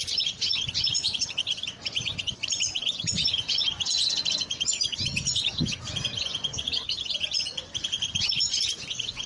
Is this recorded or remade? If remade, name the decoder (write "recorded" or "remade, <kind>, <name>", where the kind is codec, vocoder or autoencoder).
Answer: remade, vocoder, Vocos